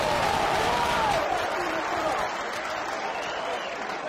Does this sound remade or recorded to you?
remade